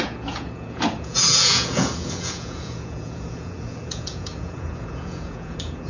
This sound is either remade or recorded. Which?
remade